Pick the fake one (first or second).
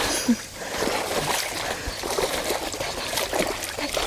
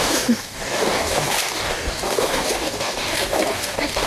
second